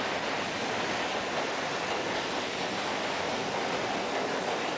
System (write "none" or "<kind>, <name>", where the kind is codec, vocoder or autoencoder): none